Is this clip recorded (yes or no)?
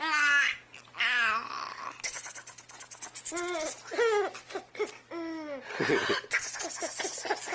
yes